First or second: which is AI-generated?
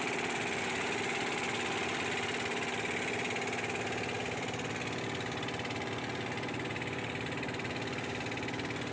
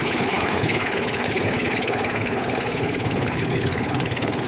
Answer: second